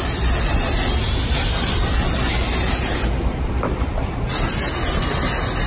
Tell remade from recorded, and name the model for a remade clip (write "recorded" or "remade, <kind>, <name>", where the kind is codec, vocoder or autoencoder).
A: recorded